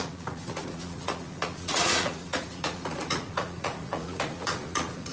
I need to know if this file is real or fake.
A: fake